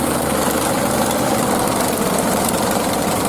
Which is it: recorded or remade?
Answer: remade